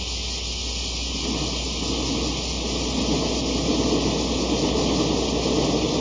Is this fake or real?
real